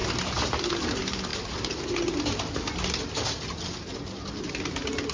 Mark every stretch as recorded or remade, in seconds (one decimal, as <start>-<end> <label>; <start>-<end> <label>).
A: 0.0-5.1 recorded